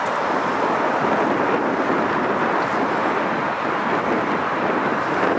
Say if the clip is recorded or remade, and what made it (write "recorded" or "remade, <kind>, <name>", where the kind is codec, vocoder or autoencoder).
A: recorded